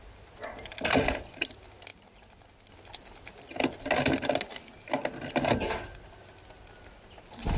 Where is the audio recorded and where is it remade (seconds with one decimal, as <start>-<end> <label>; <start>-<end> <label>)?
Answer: 0.0-7.6 recorded